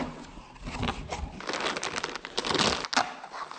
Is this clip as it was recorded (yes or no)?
yes